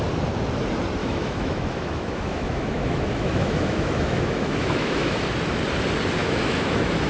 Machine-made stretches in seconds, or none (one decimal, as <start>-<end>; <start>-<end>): 1.0-5.3; 6.2-7.1